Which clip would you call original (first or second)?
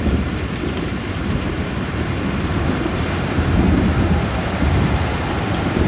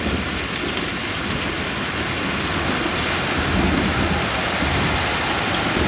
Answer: second